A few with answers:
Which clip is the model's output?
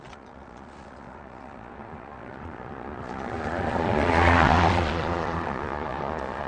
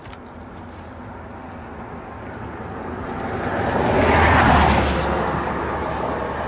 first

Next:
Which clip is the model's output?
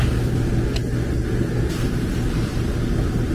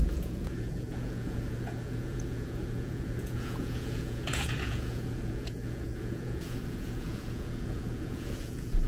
second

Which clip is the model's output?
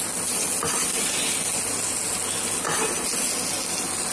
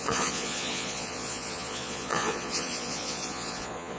second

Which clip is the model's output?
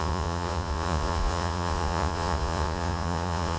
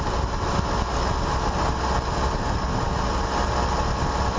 first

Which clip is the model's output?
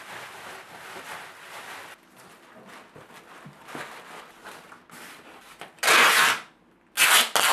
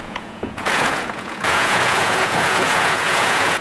second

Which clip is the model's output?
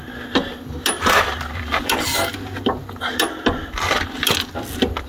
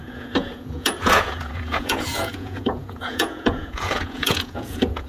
second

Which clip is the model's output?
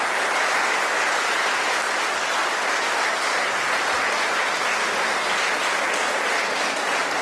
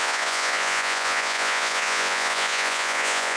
second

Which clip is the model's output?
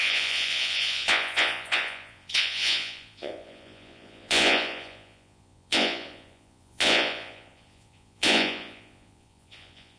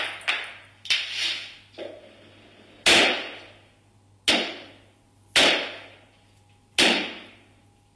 first